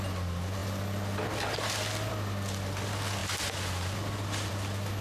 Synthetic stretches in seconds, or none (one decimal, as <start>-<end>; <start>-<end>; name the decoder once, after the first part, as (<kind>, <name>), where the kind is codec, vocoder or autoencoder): none